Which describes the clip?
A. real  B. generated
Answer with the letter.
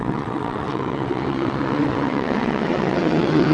B